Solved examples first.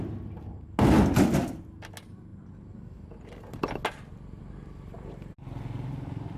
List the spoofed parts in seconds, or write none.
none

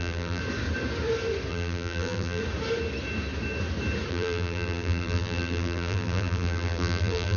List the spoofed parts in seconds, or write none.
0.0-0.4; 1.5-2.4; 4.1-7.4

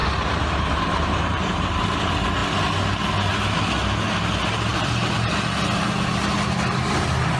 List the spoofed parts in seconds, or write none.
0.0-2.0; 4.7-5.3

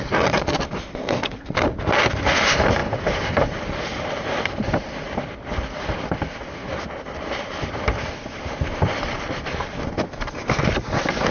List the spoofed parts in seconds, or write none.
0.0-11.3

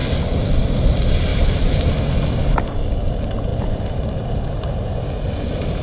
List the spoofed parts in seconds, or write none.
1.3-1.9; 3.5-5.0

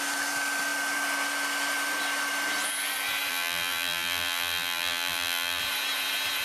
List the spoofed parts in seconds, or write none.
3.3-5.6

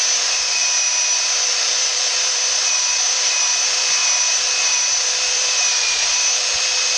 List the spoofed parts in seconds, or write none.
1.9-3.4